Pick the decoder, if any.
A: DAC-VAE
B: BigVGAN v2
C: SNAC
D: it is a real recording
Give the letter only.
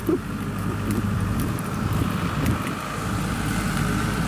B